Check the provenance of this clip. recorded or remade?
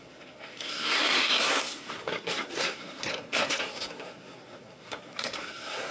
remade